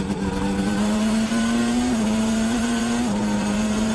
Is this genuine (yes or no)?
no